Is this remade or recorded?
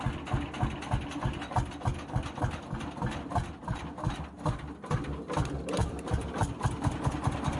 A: recorded